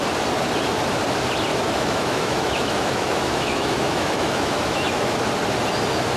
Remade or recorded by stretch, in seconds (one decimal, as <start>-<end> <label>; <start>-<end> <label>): 0.0-1.5 recorded; 1.5-5.2 remade; 5.2-6.2 recorded